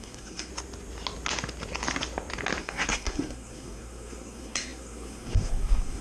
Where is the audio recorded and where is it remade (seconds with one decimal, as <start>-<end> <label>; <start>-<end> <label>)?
0.0-0.5 remade; 0.5-2.6 recorded; 2.6-6.0 remade